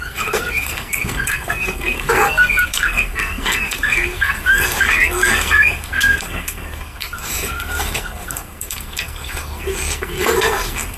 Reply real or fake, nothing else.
fake